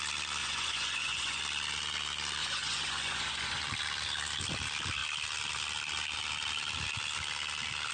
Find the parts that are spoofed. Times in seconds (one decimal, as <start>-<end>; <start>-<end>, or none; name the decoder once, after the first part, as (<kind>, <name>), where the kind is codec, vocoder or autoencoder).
0.4-1.4 (vocoder, Vocos); 2.4-3.6